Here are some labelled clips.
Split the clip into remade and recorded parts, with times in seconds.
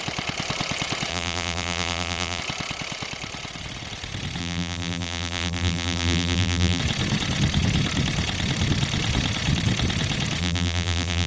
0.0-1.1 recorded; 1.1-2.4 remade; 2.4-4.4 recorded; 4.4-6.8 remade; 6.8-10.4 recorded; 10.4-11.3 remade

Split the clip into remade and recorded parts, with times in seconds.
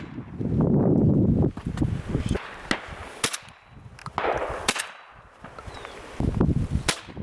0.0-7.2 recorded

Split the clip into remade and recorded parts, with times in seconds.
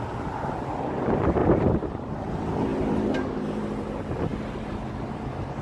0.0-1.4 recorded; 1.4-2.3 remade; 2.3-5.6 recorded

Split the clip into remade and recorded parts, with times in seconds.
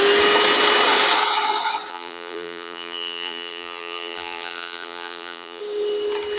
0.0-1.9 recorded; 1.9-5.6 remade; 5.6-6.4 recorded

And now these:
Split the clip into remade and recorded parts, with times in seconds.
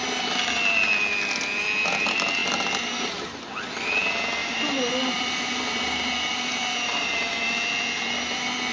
0.0-4.4 recorded; 4.4-7.3 remade; 7.3-8.7 recorded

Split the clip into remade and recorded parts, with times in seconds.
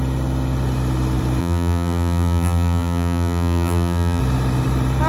0.0-1.4 recorded; 1.4-4.2 remade; 4.2-5.1 recorded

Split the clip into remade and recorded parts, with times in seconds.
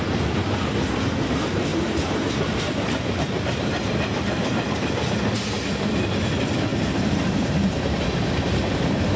0.0-1.7 recorded; 1.7-4.9 remade; 4.9-6.7 recorded; 6.7-9.2 remade